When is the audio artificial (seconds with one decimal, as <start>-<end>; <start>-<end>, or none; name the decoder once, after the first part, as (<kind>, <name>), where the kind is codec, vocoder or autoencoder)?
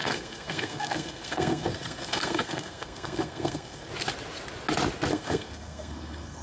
0.0-3.9 (codec, SNAC); 5.1-6.4